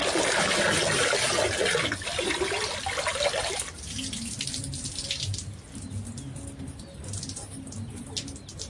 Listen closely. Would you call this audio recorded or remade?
recorded